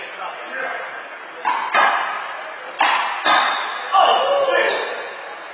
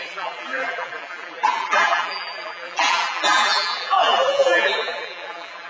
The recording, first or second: first